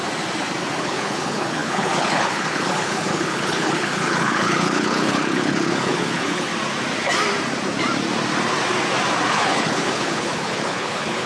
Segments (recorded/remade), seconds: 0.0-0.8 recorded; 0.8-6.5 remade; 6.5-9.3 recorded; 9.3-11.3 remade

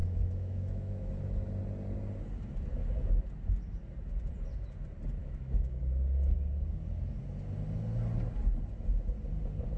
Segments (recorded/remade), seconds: 0.0-1.1 remade; 1.1-5.2 recorded; 5.2-5.8 remade; 5.8-9.8 recorded

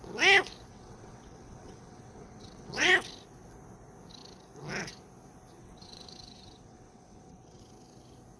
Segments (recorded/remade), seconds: 0.0-0.7 recorded; 0.7-2.9 remade; 2.9-5.6 recorded; 5.6-7.6 remade; 7.6-8.4 recorded

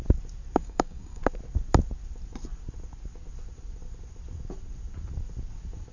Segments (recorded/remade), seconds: 0.0-0.6 recorded; 0.6-1.2 remade; 1.2-5.9 recorded

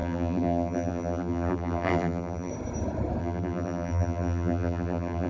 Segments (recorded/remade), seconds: 0.0-2.5 remade; 2.5-3.2 recorded; 3.2-5.3 remade

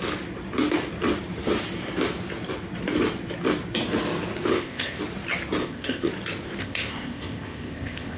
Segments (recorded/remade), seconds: 0.0-4.5 recorded; 4.5-5.0 remade; 5.0-5.6 recorded; 5.6-6.1 remade; 6.1-6.6 recorded; 6.6-8.2 remade

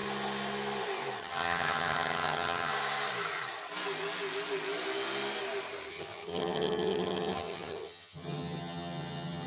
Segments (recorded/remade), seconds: 0.0-1.2 recorded; 1.2-2.7 remade; 2.7-5.9 recorded; 5.9-9.5 remade